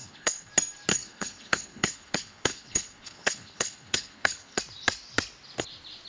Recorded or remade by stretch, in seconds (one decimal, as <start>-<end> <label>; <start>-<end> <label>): 0.0-0.5 remade; 0.5-0.9 recorded; 0.9-4.6 remade; 4.6-6.1 recorded